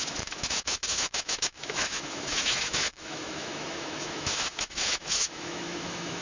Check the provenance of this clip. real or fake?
fake